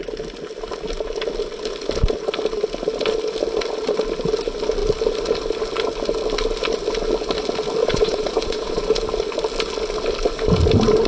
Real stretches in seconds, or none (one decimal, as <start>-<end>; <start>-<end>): 0.0-7.8; 8.8-11.1